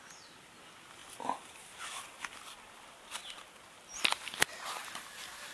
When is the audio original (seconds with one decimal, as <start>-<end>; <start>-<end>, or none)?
0.0-5.5